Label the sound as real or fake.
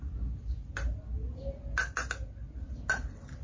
real